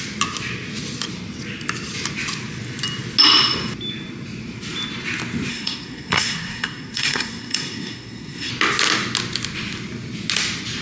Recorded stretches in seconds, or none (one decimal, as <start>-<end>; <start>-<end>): 0.0-5.5; 8.5-10.8